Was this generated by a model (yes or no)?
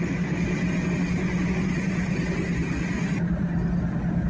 no